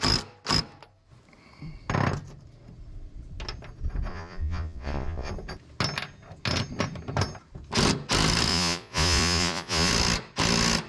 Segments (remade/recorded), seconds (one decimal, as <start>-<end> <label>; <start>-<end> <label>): 0.0-4.1 recorded; 4.1-5.3 remade; 5.3-8.5 recorded; 8.5-9.9 remade; 9.9-10.9 recorded